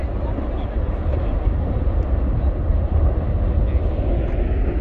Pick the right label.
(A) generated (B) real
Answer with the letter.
B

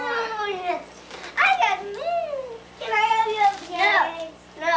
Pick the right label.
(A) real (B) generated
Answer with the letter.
A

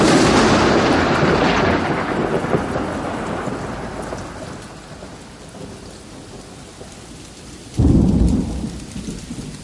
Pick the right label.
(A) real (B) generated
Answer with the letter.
A